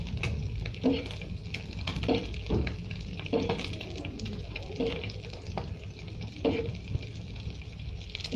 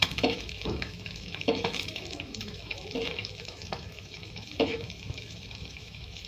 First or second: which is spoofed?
second